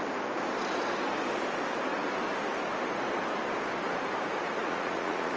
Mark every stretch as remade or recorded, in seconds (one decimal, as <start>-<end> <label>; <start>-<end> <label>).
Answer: 0.0-4.6 recorded; 4.6-5.4 remade